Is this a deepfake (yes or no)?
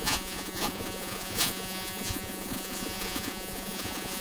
yes